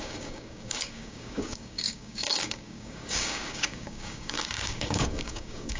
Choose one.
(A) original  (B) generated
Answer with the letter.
B